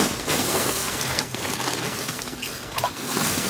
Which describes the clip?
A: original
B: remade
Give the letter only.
B